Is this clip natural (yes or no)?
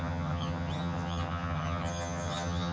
no